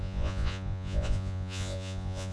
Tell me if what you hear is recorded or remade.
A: remade